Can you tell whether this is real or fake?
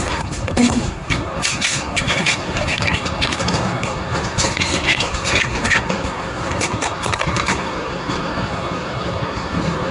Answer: fake